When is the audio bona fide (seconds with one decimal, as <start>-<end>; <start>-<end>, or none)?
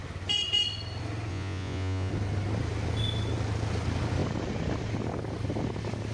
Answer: 0.0-1.3; 2.1-6.1